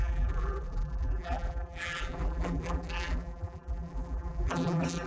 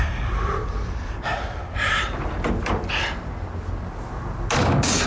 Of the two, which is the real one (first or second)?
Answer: second